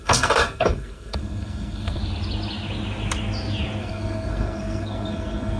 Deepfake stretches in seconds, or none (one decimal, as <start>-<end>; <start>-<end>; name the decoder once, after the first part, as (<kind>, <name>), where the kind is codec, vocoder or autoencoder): 0.0-2.0 (codec, SNAC); 3.8-5.6